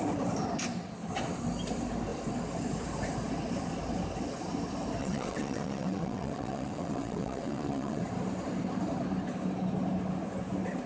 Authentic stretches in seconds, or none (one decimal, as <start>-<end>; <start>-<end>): 0.0-5.0; 8.0-10.9